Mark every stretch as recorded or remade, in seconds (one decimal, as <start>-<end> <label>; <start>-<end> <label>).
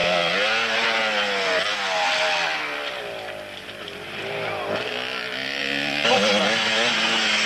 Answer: 0.0-5.6 recorded; 5.6-6.3 remade; 6.3-7.5 recorded